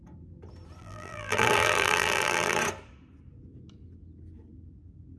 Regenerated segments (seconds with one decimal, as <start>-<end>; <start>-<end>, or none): 0.8-2.6